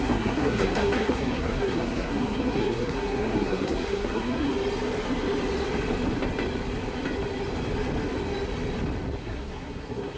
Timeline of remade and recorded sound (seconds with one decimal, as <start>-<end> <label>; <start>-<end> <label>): 0.0-4.5 remade; 4.5-9.2 recorded; 9.2-10.2 remade